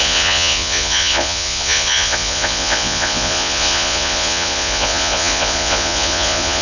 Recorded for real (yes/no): no